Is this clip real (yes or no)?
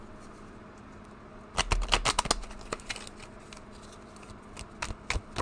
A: yes